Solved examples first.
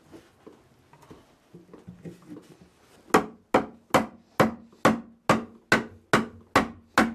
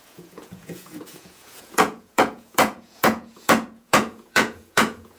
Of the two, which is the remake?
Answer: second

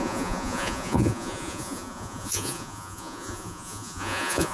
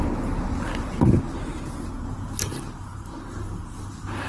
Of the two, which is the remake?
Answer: first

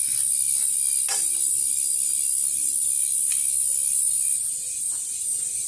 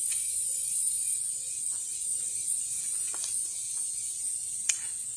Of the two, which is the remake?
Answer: second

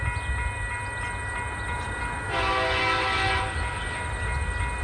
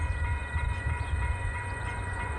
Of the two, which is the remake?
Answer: second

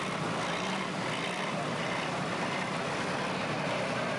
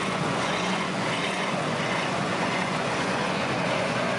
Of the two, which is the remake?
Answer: second